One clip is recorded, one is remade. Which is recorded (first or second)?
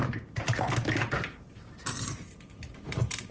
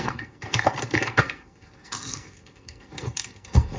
first